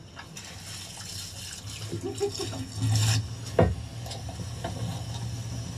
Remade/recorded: recorded